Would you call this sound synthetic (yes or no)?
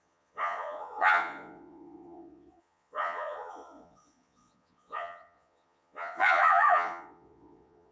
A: yes